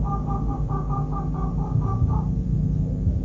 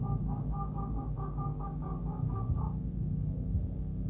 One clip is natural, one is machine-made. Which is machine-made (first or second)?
second